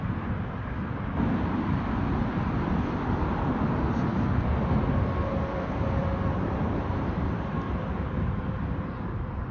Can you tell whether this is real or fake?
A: real